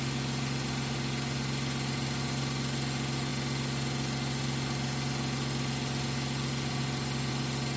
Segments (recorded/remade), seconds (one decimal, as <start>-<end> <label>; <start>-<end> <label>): 0.0-7.8 recorded